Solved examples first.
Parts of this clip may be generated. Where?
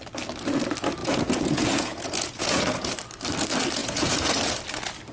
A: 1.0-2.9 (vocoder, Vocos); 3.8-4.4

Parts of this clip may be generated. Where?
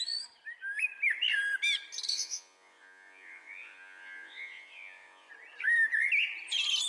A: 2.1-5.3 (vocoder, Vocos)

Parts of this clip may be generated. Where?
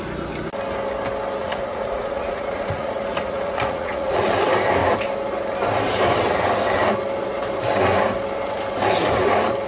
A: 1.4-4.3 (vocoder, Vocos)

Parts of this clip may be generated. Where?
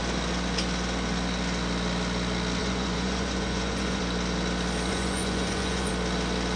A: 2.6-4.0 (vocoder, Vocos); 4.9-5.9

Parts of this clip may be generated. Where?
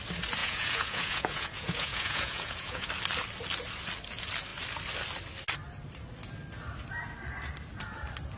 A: 0.4-2.9 (vocoder, Vocos)